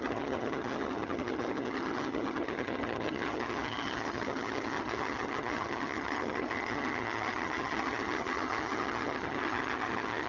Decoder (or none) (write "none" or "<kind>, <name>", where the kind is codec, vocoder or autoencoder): vocoder, HiFi-GAN